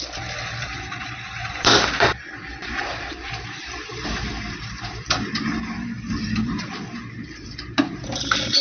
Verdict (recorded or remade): remade